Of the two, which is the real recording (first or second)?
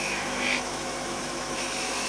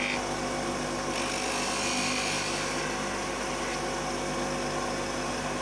second